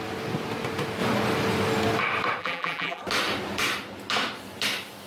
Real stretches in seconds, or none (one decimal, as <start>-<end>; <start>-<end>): 0.0-2.4; 3.0-5.1